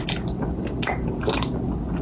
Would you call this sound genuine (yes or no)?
yes